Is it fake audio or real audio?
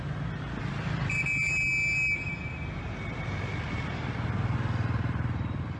real